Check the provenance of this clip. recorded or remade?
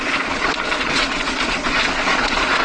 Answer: remade